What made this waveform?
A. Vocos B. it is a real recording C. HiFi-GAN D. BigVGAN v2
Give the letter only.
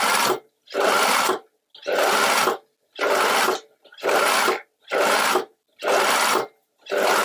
B